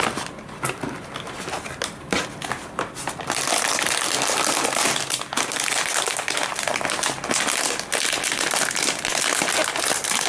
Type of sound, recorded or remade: recorded